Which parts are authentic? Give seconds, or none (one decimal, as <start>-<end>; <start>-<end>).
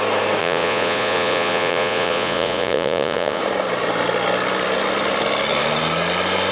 0.0-0.4; 3.4-6.5